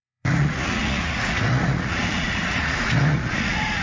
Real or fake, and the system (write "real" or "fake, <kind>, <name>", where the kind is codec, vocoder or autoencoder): fake, vocoder, Vocos